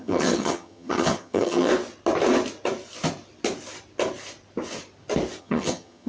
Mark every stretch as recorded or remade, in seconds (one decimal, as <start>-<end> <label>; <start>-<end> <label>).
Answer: 0.0-1.7 remade; 1.7-5.4 recorded; 5.4-6.1 remade